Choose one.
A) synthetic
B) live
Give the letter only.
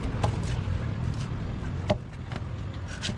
B